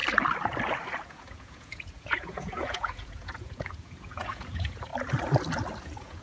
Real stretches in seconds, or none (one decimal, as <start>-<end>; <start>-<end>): 0.0-1.0; 4.9-5.8